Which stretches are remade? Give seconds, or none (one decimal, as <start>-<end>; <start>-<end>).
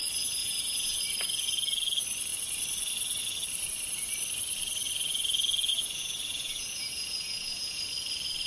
0.4-1.0; 5.7-7.9